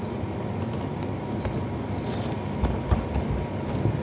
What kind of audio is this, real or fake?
real